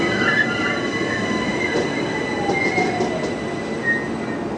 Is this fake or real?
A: real